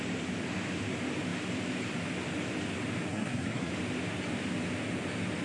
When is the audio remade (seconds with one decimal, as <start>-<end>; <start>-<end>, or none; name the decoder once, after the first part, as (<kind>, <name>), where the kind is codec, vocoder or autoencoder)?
3.1-3.7 (codec, SNAC)